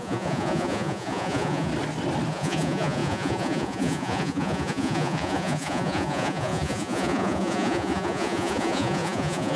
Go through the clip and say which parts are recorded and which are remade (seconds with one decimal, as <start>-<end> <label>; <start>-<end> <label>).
0.0-1.7 remade; 1.7-2.3 recorded; 2.3-9.6 remade